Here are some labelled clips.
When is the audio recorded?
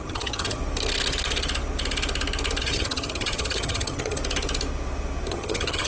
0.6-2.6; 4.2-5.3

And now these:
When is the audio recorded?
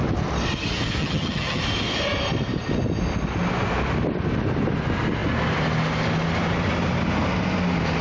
0.0-1.0; 1.6-8.0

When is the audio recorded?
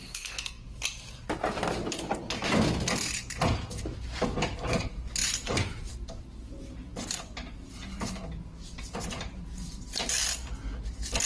0.6-11.3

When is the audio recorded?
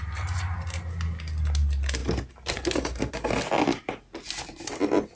0.0-5.2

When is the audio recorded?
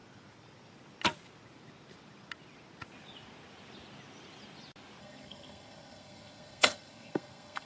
0.0-5.0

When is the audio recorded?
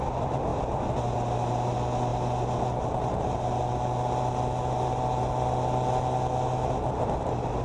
0.0-7.6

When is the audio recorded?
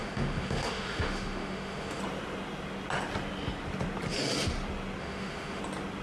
2.0-5.0; 5.6-6.0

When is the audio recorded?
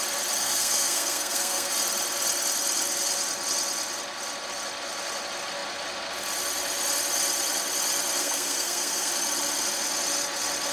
0.0-0.4; 1.7-8.2; 9.1-10.7